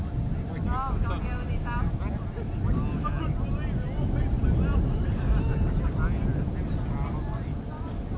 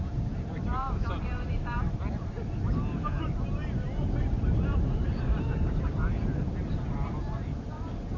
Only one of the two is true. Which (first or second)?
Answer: first